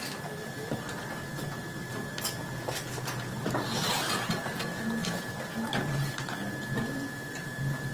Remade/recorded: recorded